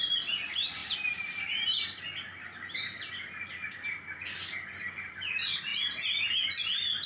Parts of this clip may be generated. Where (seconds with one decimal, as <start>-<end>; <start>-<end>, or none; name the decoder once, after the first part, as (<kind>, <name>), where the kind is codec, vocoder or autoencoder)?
none